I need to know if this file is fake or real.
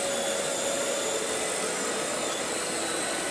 real